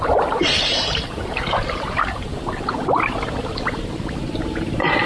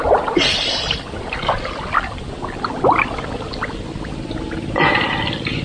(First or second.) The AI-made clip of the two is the first